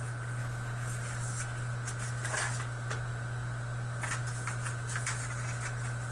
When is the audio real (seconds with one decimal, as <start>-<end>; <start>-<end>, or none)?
0.0-6.1